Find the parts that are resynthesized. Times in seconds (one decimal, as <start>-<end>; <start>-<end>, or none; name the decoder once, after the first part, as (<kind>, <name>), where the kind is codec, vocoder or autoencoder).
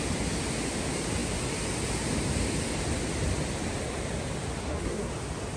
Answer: 4.6-5.1 (codec, SNAC)